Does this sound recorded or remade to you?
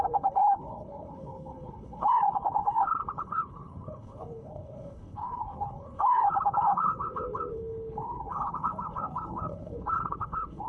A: remade